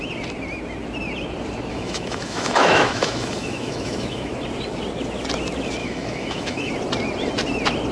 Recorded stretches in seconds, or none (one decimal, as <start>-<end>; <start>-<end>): 0.0-1.7; 4.3-5.8; 6.7-7.9